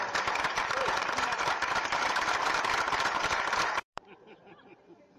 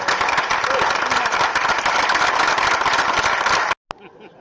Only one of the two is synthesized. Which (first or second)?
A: first